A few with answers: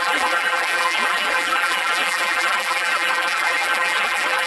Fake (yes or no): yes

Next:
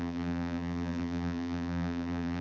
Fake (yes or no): yes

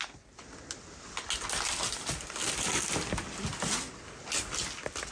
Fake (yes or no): no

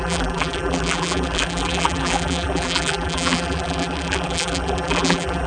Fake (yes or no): yes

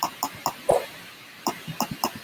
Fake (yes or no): yes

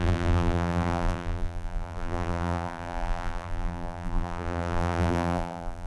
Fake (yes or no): yes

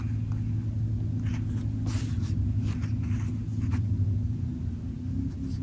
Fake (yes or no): no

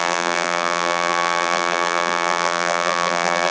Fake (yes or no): yes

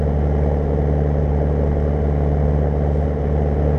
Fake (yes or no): no